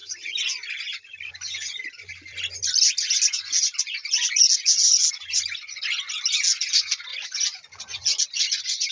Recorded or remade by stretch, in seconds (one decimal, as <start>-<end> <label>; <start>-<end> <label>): 0.0-8.9 recorded